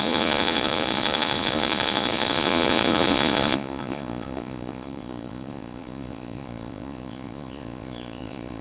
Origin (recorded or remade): remade